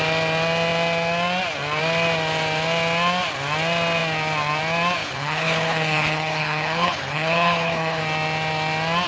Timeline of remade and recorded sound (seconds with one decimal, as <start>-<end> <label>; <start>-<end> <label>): 0.0-5.0 recorded; 5.0-8.0 remade; 8.0-9.1 recorded